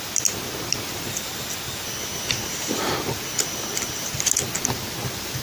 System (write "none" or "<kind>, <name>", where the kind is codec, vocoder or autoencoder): none